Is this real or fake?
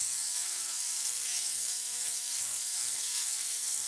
fake